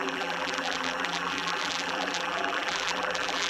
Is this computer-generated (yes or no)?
yes